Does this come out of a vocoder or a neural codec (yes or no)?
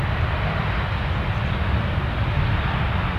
no